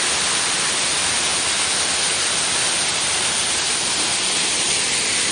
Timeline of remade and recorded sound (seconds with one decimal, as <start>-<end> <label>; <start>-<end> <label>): 0.0-5.3 recorded